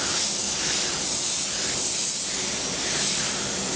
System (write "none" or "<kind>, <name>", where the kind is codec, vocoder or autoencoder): none